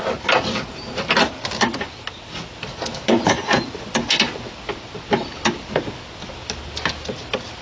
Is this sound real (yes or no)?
yes